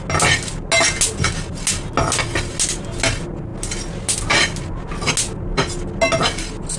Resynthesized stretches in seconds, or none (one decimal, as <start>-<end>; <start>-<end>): none